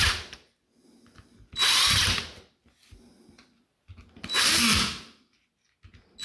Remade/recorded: recorded